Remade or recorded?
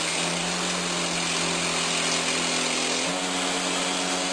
recorded